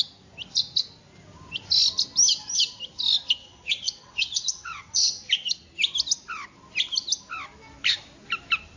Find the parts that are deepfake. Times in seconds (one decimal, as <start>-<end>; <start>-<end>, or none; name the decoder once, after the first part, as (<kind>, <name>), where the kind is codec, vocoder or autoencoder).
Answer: 3.4-5.3 (vocoder, WaveNeXt)